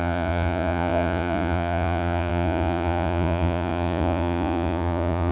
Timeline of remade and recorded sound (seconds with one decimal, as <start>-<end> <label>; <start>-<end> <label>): 0.0-5.3 remade